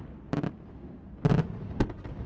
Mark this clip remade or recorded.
recorded